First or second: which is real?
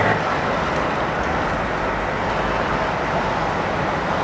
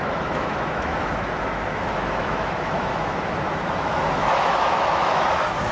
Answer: first